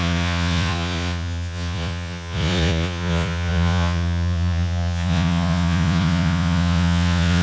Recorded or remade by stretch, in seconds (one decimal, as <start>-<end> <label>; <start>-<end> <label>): 0.0-7.4 remade